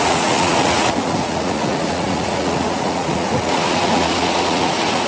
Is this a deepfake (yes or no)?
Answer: yes